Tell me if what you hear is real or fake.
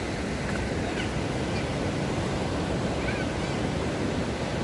real